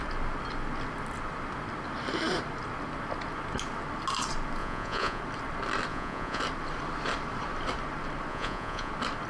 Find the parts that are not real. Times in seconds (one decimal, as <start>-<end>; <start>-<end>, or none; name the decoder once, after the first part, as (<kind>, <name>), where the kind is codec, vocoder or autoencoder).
4.6-5.2 (vocoder, Vocos); 5.9-6.4; 8.3-8.9